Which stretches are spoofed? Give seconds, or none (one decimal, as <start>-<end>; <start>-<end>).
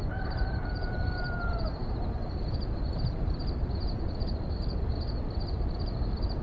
0.0-3.4; 5.2-6.4